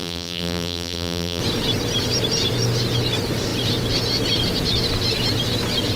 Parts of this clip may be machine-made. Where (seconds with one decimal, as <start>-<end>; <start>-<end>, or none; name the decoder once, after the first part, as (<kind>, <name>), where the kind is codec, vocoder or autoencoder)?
0.0-1.4 (vocoder, BigVGAN v2)